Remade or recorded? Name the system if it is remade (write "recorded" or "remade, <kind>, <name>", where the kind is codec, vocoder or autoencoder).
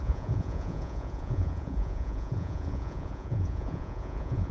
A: remade, vocoder, Vocos